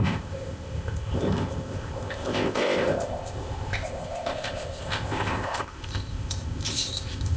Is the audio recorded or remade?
remade